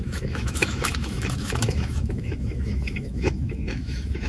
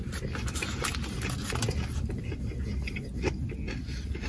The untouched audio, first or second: second